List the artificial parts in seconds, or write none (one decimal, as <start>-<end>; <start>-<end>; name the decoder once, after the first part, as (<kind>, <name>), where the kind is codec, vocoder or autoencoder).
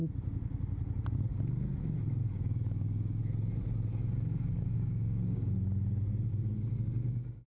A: 2.2-3.2 (codec, DAC); 3.9-5.5; 6.3-7.6